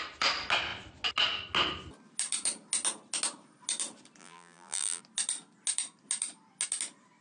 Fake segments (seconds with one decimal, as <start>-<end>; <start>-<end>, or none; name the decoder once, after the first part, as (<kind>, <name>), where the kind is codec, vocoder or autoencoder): 4.2-5.0 (vocoder, BigVGAN v2)